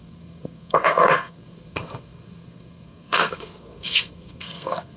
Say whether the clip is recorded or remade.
remade